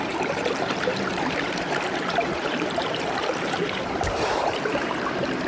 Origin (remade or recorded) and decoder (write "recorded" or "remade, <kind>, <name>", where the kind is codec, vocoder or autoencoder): remade, vocoder, BigVGAN v2